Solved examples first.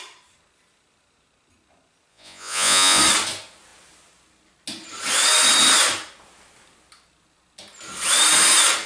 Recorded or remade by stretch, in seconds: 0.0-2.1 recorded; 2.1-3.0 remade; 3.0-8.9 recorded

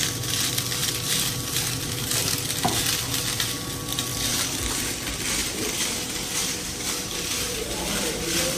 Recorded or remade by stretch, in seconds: 0.0-0.8 recorded; 0.8-2.0 remade; 2.0-4.1 recorded; 4.1-4.8 remade; 4.8-5.4 recorded; 5.4-7.8 remade; 7.8-8.6 recorded

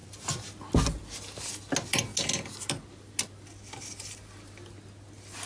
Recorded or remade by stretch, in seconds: 0.0-5.5 recorded

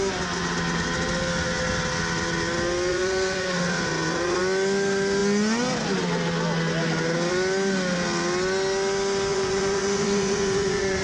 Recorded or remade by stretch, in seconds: 0.0-2.9 recorded; 2.9-4.4 remade; 4.4-9.3 recorded; 9.3-11.0 remade